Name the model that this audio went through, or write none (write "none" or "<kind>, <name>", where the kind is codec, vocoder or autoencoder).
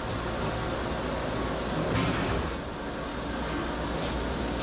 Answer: none